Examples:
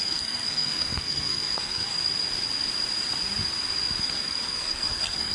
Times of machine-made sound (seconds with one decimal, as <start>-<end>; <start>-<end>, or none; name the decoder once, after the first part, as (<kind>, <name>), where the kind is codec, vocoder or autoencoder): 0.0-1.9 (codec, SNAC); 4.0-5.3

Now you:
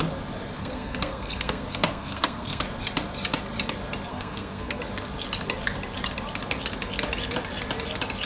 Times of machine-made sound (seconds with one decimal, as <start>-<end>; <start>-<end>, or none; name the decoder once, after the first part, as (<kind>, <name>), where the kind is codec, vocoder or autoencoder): 0.6-2.6 (codec, SNAC); 4.1-4.8

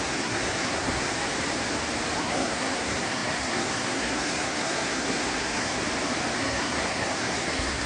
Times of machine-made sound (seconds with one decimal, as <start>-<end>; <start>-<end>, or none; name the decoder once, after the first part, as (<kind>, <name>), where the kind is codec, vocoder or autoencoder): 0.0-1.1 (codec, SNAC); 2.2-5.8; 6.4-7.9

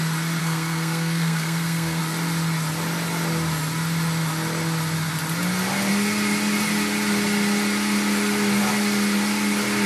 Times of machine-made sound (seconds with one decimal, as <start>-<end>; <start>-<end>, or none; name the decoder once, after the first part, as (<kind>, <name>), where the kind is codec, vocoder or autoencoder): 0.4-2.0 (codec, SNAC)